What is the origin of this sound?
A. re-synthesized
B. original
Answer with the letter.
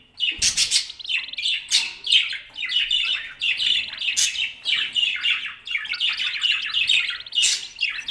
B